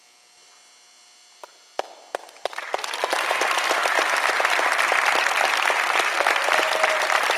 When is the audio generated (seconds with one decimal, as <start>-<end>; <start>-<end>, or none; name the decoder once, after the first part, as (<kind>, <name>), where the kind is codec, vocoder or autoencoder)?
none